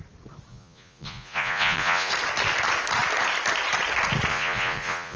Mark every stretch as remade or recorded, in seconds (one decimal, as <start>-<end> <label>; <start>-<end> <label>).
0.0-0.5 recorded; 0.5-2.1 remade; 2.1-4.3 recorded; 4.3-5.2 remade